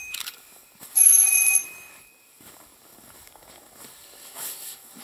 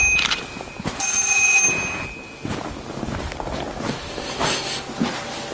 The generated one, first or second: first